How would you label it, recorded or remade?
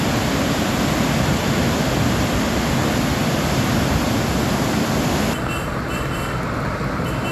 recorded